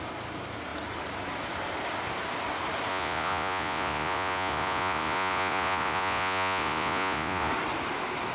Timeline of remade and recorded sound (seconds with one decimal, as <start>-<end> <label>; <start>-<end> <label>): 0.0-2.9 recorded; 2.9-7.5 remade; 7.5-8.3 recorded